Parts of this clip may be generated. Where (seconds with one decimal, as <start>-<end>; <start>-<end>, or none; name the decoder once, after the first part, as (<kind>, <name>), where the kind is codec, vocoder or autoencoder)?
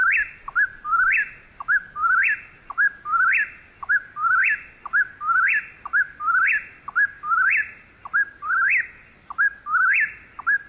none